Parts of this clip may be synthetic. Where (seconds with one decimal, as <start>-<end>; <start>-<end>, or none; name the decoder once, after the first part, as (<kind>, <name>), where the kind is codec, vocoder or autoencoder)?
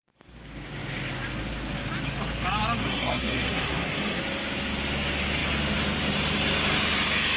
2.8-4.2 (codec, SNAC)